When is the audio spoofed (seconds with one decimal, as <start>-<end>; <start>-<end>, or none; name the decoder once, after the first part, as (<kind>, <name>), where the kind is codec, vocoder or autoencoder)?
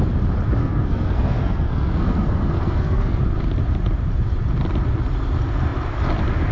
0.6-3.2 (codec, SNAC)